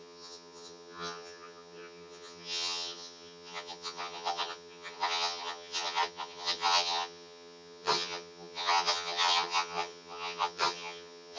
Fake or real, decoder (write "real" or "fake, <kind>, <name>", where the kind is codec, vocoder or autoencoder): fake, vocoder, HiFi-GAN